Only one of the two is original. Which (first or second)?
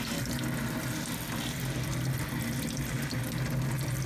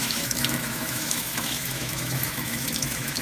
first